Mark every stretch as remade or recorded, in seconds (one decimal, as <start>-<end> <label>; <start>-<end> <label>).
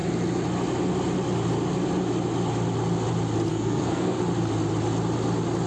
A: 0.0-3.5 recorded; 3.5-4.2 remade; 4.2-5.7 recorded